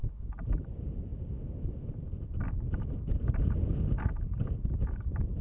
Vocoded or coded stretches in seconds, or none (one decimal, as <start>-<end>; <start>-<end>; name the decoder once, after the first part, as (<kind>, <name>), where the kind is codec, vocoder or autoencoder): 0.6-1.1 (vocoder, BigVGAN v2); 4.3-5.4

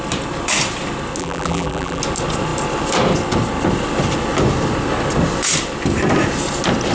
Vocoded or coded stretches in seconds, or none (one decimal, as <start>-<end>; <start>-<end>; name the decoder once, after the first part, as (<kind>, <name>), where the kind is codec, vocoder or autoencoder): 1.2-2.0 (vocoder, BigVGAN v2)

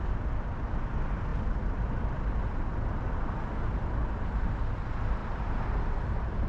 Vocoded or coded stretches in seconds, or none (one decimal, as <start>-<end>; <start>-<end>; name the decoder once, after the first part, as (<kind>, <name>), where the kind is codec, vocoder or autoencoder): 1.3-3.1 (vocoder, BigVGAN v2); 5.2-6.5

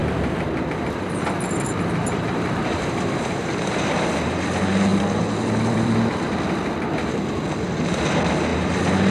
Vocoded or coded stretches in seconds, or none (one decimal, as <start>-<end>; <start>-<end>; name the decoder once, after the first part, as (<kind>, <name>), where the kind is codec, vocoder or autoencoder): 0.0-4.0 (vocoder, BigVGAN v2); 4.9-7.4

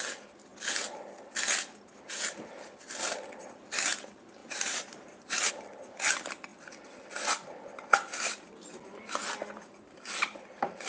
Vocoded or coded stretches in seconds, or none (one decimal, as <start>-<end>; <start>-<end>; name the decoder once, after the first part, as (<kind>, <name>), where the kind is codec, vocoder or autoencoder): 4.4-5.5 (vocoder, BigVGAN v2)

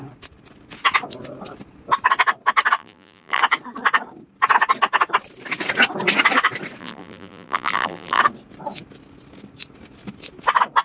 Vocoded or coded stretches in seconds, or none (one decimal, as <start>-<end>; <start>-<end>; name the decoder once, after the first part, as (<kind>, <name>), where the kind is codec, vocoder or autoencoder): 2.8-3.4 (vocoder, BigVGAN v2); 6.8-8.2